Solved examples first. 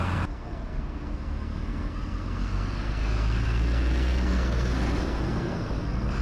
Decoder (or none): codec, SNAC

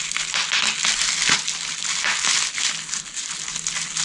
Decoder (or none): none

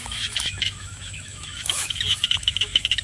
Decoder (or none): autoencoder, DAC-VAE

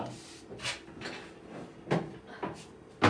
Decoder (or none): none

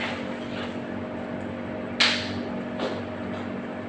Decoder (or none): none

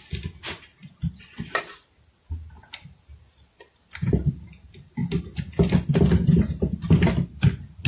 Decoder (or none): none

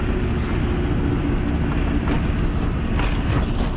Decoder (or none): none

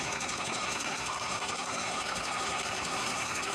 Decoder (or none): codec, SNAC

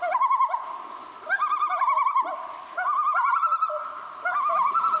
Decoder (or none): none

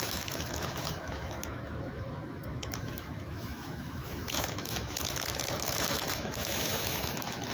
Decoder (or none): autoencoder, DAC-VAE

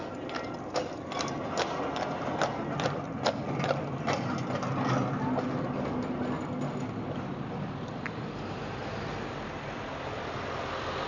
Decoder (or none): none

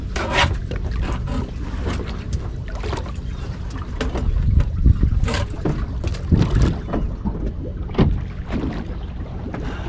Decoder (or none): none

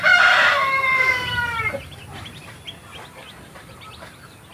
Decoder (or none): vocoder, BigVGAN v2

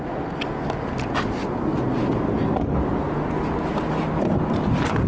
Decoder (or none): none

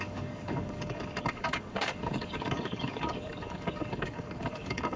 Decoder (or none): codec, DAC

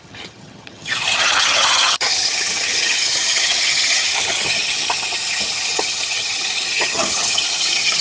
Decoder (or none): vocoder, HiFi-GAN